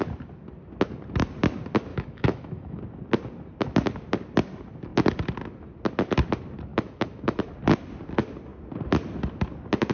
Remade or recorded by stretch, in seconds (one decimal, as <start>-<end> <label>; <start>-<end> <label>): 0.0-1.9 recorded; 1.9-2.8 remade; 2.8-6.7 recorded; 6.7-7.5 remade; 7.5-9.9 recorded